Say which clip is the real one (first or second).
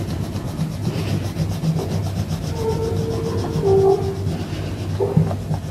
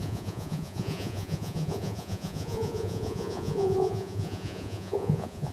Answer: first